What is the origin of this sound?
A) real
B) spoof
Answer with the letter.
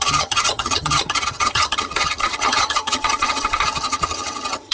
B